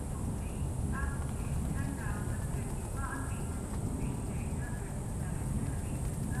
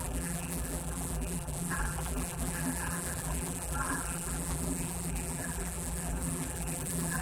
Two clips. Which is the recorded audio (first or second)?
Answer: first